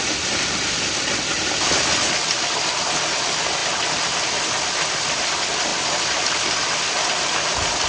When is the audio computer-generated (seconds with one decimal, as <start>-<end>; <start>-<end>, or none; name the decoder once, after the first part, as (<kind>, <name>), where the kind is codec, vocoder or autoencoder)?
none